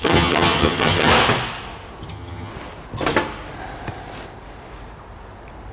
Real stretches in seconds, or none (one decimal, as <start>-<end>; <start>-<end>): 1.1-2.1; 2.5-5.7